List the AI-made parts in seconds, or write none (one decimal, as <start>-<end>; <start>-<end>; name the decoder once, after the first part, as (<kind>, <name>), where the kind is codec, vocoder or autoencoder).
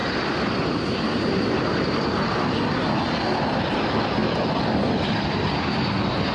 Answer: none